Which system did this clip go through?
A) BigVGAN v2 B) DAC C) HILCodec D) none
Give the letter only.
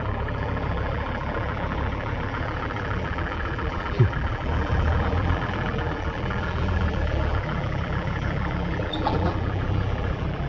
A